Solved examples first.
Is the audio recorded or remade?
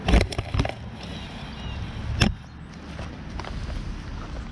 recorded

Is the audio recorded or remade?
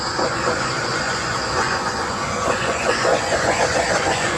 remade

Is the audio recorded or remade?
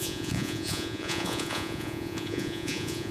remade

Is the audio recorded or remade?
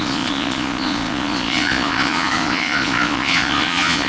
remade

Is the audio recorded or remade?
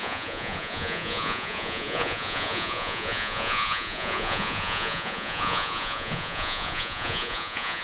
remade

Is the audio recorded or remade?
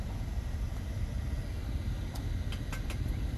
recorded